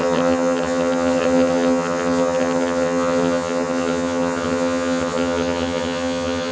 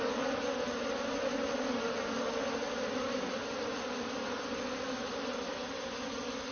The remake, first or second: first